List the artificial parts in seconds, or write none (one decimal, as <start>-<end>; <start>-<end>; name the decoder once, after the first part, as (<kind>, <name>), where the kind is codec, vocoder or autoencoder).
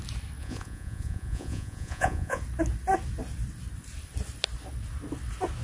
0.4-2.4 (vocoder, Vocos)